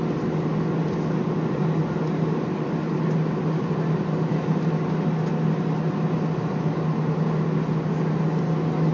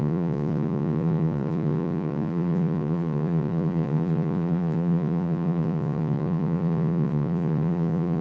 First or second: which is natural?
first